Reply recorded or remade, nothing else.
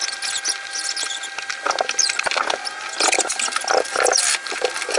recorded